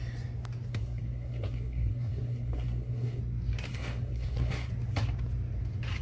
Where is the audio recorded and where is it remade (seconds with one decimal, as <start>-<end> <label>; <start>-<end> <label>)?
0.0-0.7 recorded; 0.7-3.2 remade; 3.2-3.7 recorded; 3.7-4.7 remade; 4.7-6.0 recorded

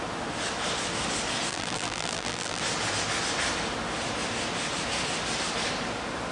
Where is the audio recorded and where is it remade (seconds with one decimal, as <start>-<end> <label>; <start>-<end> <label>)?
0.0-1.5 recorded; 1.5-2.6 remade; 2.6-6.3 recorded

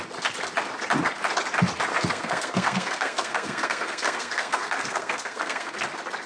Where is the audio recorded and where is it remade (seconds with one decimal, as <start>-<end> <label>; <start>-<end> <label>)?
0.0-1.9 recorded; 1.9-5.7 remade; 5.7-6.3 recorded